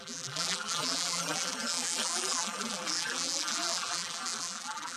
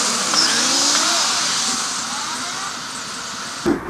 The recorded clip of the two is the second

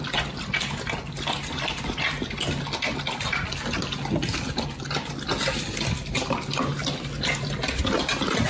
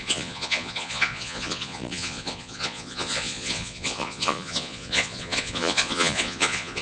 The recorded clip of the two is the first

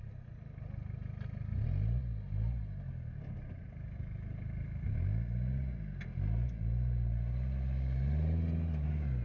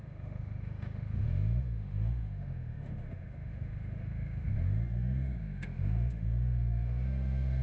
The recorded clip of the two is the first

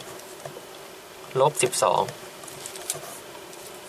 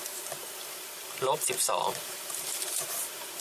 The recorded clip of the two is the first